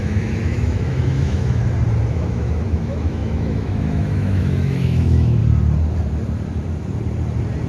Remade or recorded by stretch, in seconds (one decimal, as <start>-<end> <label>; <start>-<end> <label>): 0.0-1.6 remade; 1.6-2.1 recorded; 2.1-5.4 remade; 5.4-7.7 recorded